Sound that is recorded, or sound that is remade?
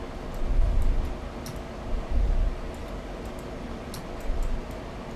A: recorded